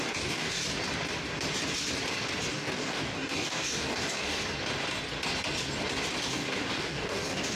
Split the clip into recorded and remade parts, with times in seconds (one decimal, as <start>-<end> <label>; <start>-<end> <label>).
0.0-0.6 remade; 0.6-2.5 recorded; 2.5-4.4 remade; 4.4-6.2 recorded; 6.2-7.6 remade